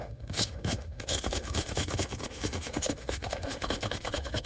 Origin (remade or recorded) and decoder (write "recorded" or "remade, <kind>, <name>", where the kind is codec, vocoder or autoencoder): remade, autoencoder, DAC-VAE